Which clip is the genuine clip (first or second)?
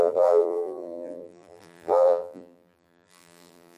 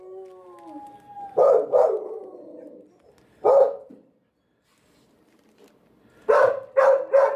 second